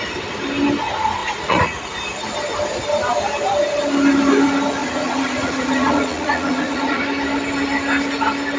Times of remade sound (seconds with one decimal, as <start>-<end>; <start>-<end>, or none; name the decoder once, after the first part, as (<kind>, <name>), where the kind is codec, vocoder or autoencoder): 1.2-1.8 (vocoder, Vocos); 4.8-7.0